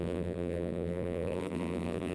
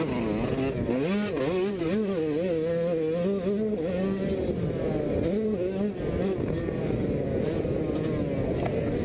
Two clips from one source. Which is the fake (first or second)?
first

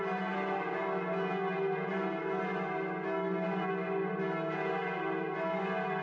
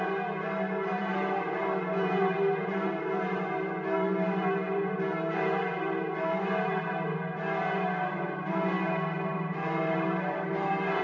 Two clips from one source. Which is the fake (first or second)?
second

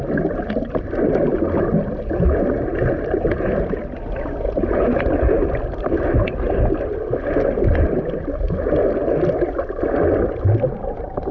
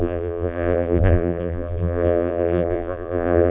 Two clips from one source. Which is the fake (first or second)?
second